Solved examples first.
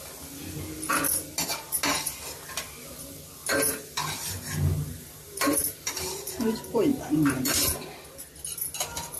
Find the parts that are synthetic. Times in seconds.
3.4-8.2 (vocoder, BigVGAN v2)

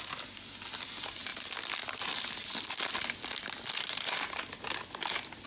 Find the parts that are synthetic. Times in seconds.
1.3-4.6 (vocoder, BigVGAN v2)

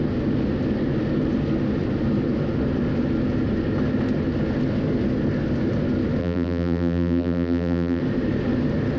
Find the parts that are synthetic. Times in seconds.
6.2-8.0 (vocoder, BigVGAN v2)

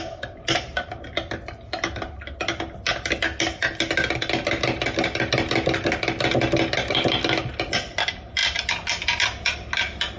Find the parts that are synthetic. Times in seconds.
none

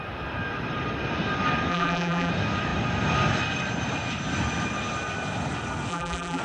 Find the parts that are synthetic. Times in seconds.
1.7-2.3 (vocoder, BigVGAN v2); 5.9-6.4

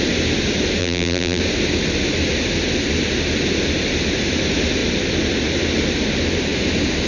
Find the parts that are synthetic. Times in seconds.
0.8-1.4 (vocoder, BigVGAN v2)

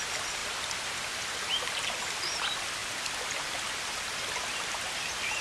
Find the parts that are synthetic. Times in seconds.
none

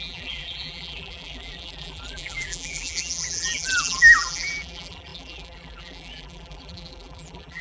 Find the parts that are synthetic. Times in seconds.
0.0-7.6 (vocoder, BigVGAN v2)